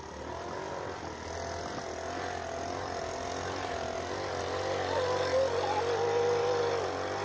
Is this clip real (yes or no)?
yes